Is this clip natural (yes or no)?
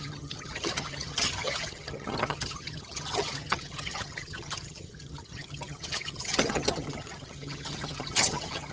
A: no